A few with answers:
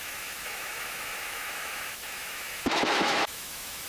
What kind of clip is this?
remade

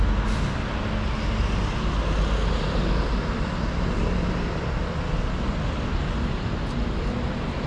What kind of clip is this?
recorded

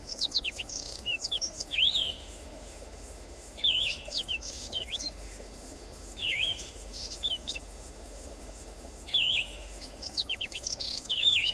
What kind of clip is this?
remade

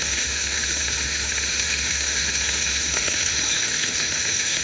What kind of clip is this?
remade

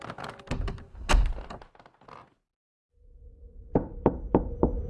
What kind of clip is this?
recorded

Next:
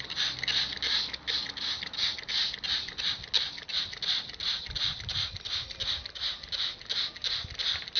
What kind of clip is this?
recorded